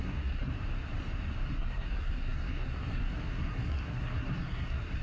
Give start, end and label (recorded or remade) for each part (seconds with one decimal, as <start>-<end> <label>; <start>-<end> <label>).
0.0-0.5 remade; 0.5-1.5 recorded; 1.5-5.0 remade